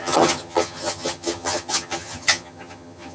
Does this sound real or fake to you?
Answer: fake